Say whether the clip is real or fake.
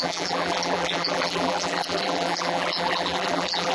fake